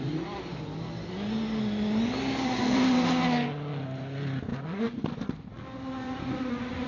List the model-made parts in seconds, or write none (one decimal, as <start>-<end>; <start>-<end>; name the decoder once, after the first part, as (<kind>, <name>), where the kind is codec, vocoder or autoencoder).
2.6-3.1 (vocoder, BigVGAN v2)